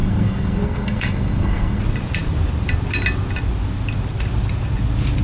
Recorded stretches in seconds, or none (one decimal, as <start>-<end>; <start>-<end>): 1.8-5.2